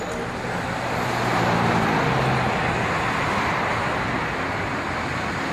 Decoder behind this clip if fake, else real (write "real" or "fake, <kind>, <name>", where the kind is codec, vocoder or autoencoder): real